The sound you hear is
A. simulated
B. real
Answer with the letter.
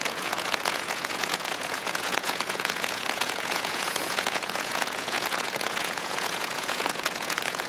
A